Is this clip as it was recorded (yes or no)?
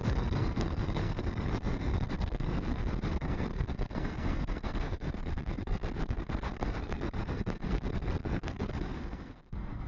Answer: no